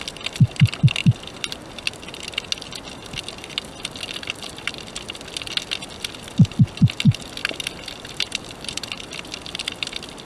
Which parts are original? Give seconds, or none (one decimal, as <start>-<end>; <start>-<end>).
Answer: 0.0-1.0; 1.7-3.4; 4.9-7.4; 9.1-10.3